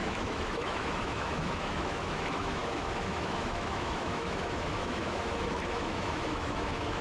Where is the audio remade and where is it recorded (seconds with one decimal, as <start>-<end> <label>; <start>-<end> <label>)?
0.0-7.0 remade